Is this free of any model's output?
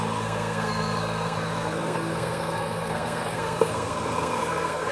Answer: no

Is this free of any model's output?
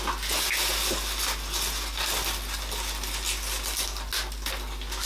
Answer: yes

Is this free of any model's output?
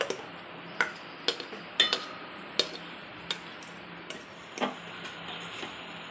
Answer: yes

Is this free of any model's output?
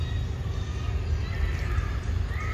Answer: yes